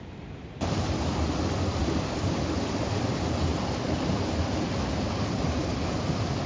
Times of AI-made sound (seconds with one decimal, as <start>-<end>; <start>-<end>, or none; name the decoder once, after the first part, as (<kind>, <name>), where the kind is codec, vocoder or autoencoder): none